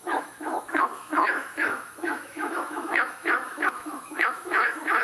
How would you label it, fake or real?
fake